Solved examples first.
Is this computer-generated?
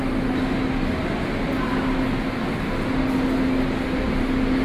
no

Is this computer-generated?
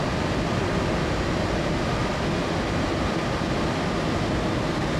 no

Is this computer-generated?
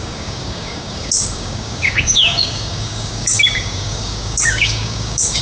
yes